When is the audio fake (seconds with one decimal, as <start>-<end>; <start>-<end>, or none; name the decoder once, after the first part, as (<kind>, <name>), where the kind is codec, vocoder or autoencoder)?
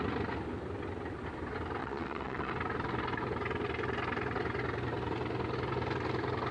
1.8-2.5 (vocoder, Vocos)